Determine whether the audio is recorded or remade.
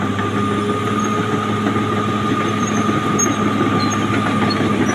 recorded